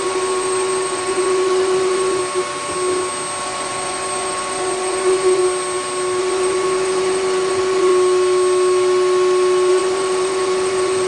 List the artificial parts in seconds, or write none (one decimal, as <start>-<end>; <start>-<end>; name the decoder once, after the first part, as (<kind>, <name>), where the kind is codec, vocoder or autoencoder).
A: 0.0-2.2 (vocoder, Vocos); 3.4-5.4; 6.2-7.9; 9.7-11.1